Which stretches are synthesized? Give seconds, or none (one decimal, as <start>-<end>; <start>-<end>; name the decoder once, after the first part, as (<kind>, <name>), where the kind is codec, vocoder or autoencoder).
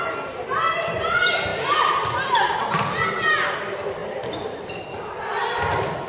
none